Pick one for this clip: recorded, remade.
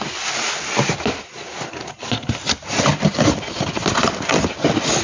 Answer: recorded